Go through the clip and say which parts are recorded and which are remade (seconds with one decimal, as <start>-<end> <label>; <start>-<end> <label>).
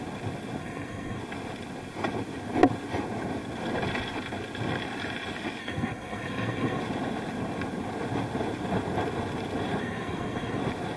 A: 0.0-0.6 recorded; 0.6-1.2 remade; 1.2-5.6 recorded; 5.6-6.8 remade; 6.8-9.8 recorded; 9.8-10.6 remade; 10.6-11.0 recorded